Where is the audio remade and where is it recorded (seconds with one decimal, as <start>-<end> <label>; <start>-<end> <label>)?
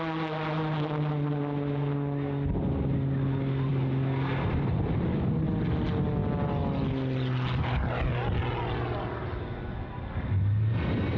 0.0-11.2 recorded